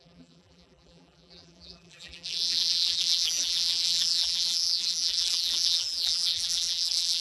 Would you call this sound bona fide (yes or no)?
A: no